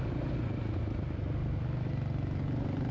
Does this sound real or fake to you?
real